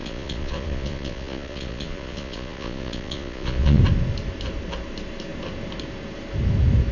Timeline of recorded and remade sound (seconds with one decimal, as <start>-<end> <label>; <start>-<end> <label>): 0.0-3.8 remade; 3.8-6.9 recorded